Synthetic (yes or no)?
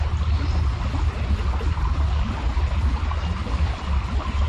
no